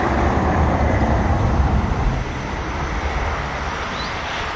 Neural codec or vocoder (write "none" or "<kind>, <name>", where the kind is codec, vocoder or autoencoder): vocoder, BigVGAN v2